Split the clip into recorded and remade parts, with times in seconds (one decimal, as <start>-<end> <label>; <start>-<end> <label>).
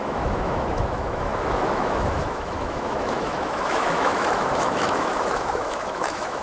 0.0-6.4 remade